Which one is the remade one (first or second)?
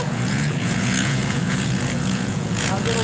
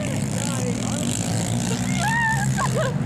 first